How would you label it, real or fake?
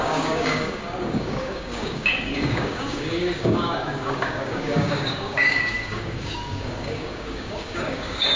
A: fake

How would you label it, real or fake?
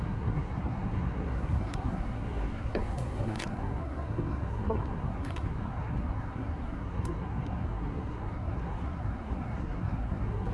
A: fake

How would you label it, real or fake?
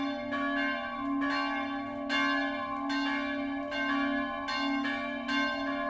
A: real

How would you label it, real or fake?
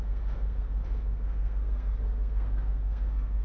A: fake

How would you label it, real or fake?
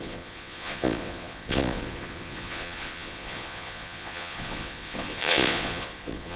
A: fake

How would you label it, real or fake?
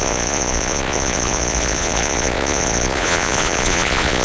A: fake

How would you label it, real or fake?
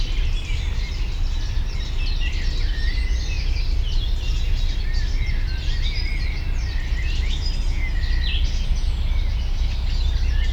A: real